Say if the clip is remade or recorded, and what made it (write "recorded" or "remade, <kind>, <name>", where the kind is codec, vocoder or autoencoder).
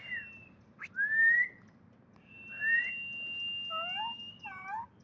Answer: recorded